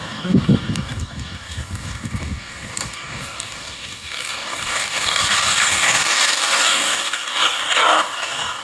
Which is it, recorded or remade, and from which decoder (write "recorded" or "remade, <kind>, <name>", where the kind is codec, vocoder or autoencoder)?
remade, codec, DAC